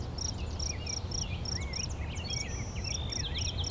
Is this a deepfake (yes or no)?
no